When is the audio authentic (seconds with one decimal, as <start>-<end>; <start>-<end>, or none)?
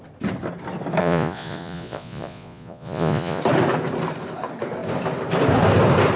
0.0-1.0; 3.4-6.2